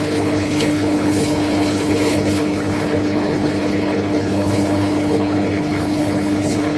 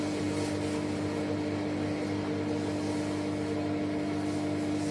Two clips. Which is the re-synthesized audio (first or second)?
first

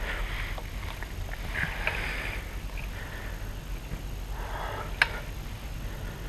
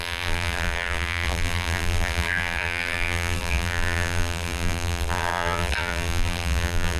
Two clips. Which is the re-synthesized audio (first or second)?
second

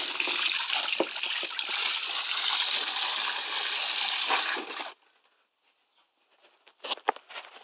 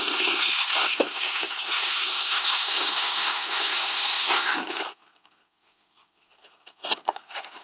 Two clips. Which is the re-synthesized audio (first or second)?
second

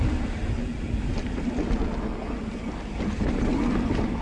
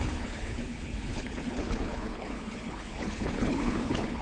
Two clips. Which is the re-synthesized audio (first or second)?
second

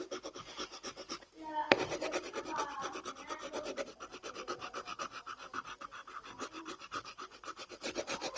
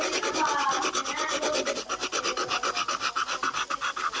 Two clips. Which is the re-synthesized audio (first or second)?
first